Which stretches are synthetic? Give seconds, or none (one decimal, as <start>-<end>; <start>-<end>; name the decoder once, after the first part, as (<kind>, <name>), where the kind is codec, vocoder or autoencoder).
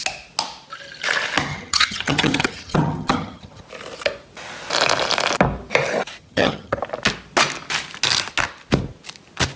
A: 1.5-3.6 (vocoder, HiFi-GAN); 6.2-6.8